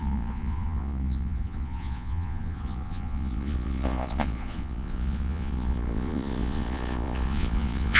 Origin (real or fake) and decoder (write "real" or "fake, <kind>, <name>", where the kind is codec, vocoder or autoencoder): fake, vocoder, Vocos